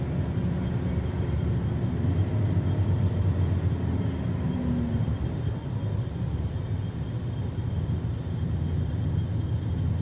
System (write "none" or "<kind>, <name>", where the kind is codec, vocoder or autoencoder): none